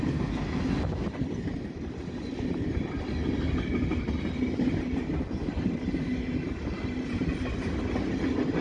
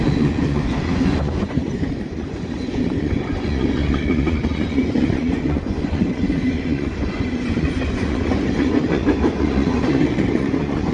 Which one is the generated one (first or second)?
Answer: second